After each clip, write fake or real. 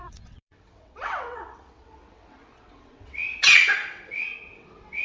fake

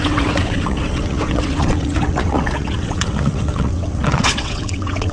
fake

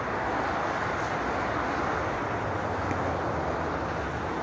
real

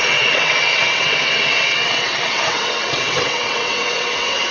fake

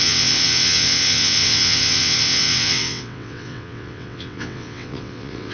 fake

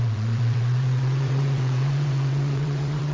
fake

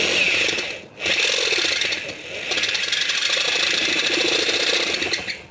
real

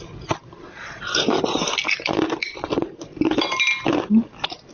real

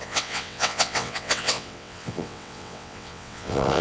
fake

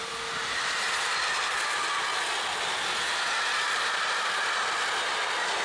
real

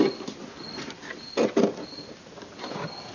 real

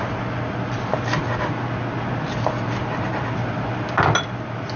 real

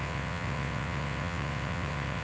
fake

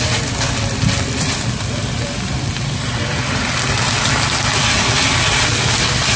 real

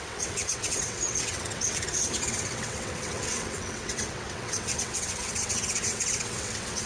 fake